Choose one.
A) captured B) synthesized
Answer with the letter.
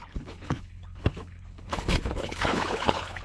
B